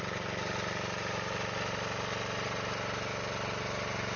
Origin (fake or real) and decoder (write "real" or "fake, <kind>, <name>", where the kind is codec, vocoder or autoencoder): real